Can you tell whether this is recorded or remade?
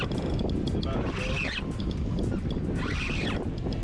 recorded